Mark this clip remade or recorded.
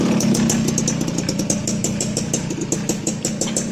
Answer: recorded